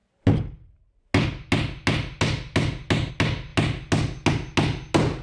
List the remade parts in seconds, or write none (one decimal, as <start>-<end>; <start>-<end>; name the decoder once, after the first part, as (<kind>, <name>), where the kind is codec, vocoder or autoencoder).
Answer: none